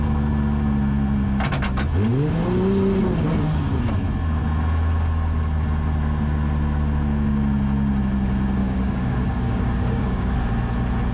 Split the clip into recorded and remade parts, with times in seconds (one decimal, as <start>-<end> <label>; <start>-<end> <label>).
0.0-8.6 recorded; 8.6-10.5 remade; 10.5-11.1 recorded